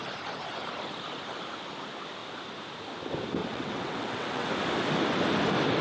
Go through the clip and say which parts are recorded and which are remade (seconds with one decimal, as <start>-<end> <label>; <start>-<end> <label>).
0.0-3.4 recorded; 3.4-4.5 remade; 4.5-5.8 recorded

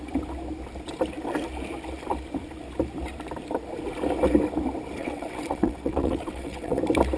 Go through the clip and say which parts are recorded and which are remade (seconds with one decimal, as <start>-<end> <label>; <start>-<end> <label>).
0.0-5.0 recorded; 5.0-6.8 remade; 6.8-7.2 recorded